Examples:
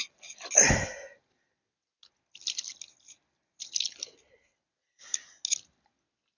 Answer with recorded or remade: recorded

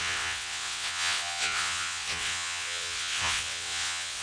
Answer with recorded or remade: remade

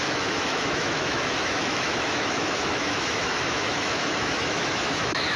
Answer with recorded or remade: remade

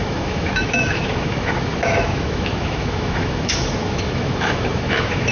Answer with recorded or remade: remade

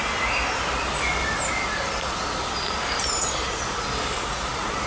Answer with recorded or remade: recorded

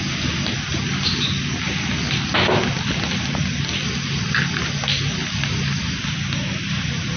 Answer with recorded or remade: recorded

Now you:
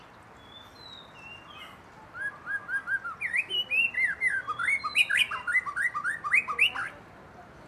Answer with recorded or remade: recorded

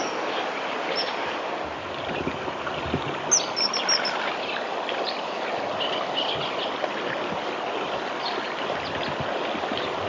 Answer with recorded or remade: recorded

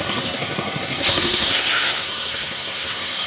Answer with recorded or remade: remade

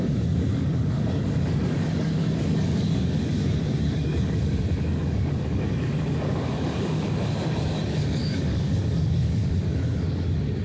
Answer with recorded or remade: remade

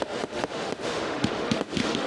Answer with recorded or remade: remade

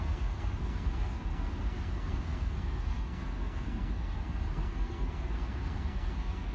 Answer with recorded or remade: remade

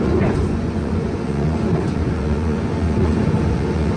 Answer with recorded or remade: remade